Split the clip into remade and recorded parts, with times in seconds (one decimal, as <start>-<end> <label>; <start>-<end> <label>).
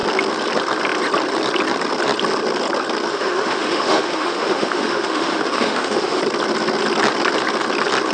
0.0-3.1 recorded; 3.1-6.2 remade; 6.2-8.1 recorded